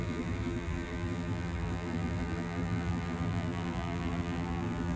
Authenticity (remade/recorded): remade